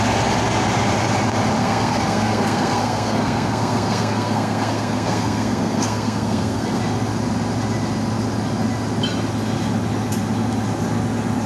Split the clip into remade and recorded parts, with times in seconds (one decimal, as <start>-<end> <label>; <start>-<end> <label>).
0.0-1.6 recorded; 1.6-6.8 remade; 6.8-11.5 recorded